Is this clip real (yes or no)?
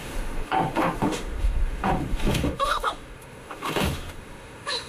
no